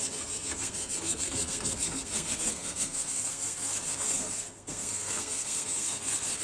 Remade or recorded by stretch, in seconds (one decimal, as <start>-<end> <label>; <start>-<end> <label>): 0.0-6.4 remade